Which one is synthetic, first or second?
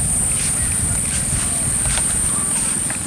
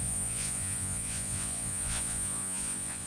second